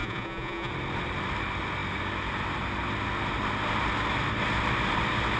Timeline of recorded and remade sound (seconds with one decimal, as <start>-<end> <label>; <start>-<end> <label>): 0.0-0.7 remade; 0.7-5.4 recorded